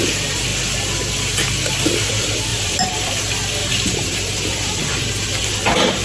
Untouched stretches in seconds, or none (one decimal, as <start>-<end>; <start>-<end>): 0.0-2.5; 3.1-3.6